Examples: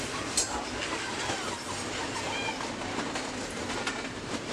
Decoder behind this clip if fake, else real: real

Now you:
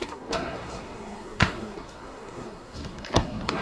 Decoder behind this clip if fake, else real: fake, codec, SNAC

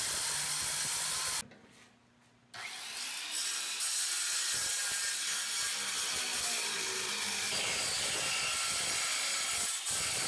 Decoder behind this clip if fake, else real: real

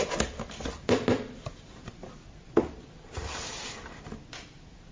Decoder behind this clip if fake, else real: real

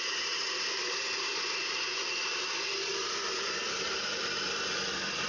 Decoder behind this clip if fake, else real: real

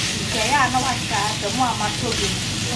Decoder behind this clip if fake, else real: real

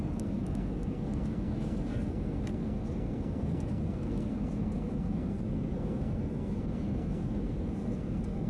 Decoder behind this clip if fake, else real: fake, codec, SNAC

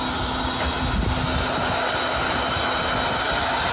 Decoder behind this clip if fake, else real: real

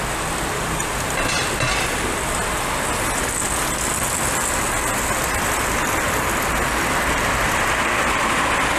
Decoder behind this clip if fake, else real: real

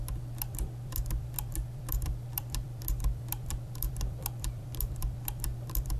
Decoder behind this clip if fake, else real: fake, vocoder, BigVGAN v2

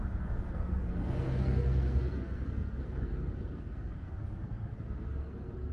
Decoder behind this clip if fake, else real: fake, codec, SNAC